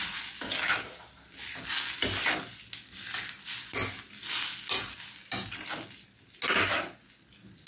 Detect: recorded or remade recorded